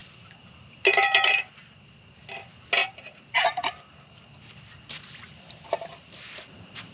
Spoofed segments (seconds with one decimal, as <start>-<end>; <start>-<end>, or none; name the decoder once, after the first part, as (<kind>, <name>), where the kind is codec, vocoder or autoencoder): 0.0-1.5 (vocoder, BigVGAN v2); 2.8-3.9